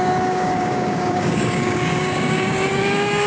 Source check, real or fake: fake